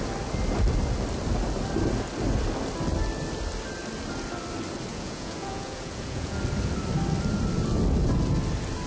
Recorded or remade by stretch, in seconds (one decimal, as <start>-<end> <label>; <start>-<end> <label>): 0.0-4.9 recorded; 4.9-6.4 remade; 6.4-8.9 recorded